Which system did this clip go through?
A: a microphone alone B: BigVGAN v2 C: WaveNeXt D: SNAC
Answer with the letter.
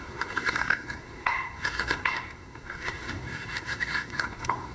D